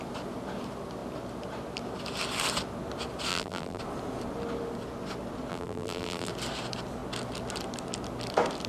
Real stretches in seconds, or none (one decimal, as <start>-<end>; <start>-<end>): 0.0-3.3; 3.8-5.5; 6.3-8.7